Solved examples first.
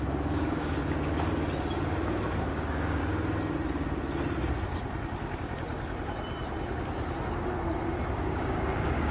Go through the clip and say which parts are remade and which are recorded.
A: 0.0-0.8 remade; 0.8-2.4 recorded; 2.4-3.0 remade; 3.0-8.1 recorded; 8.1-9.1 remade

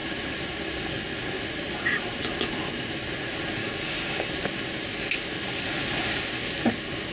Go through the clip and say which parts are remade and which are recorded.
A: 0.0-3.6 recorded; 3.6-4.3 remade; 4.3-7.1 recorded

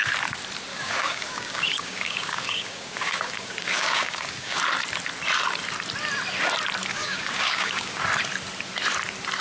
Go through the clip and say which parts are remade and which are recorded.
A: 0.0-0.7 recorded; 0.7-4.6 remade; 4.6-6.9 recorded; 6.9-8.0 remade; 8.0-9.4 recorded

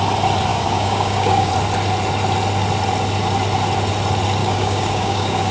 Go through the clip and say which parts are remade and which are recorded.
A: 0.0-0.5 recorded; 0.5-1.5 remade; 1.5-4.4 recorded; 4.4-5.5 remade

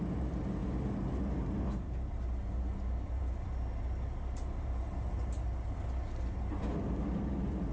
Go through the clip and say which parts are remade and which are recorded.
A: 0.0-7.7 recorded